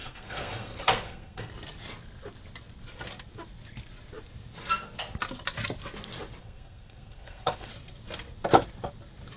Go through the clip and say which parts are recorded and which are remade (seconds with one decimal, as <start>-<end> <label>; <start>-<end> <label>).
0.0-1.5 remade; 1.5-6.4 recorded; 6.4-7.7 remade; 7.7-9.4 recorded